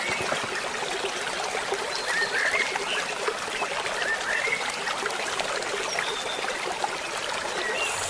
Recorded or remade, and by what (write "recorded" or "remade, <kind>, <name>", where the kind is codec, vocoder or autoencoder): recorded